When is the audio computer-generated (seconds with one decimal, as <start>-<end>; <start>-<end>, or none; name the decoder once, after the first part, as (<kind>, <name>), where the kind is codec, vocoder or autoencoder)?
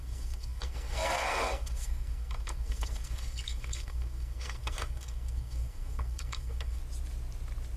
0.0-6.8 (codec, SNAC)